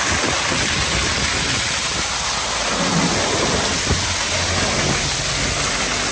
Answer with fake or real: real